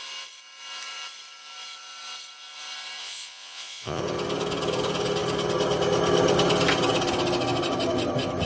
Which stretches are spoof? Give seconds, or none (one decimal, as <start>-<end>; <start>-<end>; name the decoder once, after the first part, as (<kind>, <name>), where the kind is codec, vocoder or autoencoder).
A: 3.0-4.0 (vocoder, Vocos)